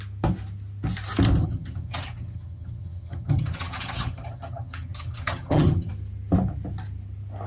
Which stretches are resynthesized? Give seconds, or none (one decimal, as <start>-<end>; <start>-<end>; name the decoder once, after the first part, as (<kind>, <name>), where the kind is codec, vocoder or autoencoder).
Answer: 1.4-5.9 (vocoder, HiFi-GAN)